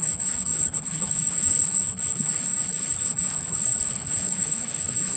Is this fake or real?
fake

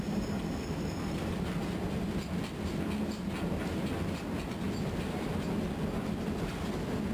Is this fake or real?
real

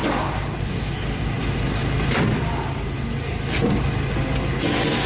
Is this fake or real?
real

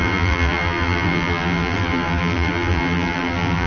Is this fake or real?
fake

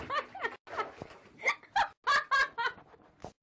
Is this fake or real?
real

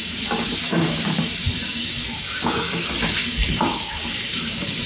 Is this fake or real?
fake